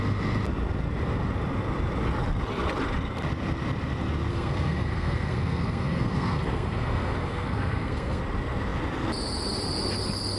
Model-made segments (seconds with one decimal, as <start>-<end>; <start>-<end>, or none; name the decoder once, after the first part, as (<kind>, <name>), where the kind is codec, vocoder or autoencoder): 4.3-8.2 (codec, SNAC)